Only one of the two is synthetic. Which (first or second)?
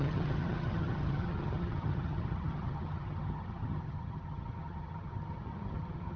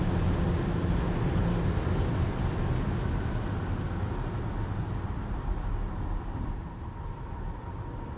first